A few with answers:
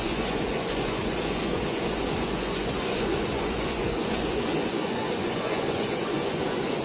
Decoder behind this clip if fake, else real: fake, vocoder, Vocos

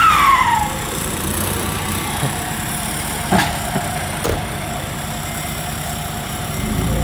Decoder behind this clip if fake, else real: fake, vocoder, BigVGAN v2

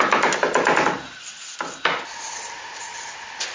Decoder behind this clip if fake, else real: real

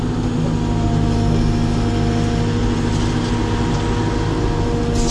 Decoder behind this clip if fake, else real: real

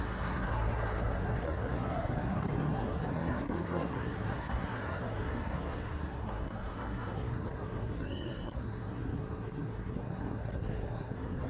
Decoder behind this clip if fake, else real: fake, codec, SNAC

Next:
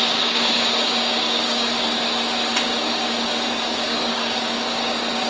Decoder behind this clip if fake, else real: fake, codec, DAC